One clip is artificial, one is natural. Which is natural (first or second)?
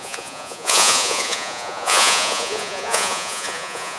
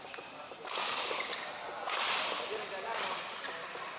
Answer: second